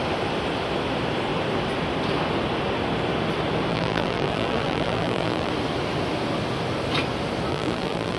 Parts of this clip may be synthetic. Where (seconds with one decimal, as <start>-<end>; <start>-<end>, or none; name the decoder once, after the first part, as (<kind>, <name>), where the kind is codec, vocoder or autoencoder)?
3.7-5.5 (vocoder, BigVGAN v2); 7.5-8.2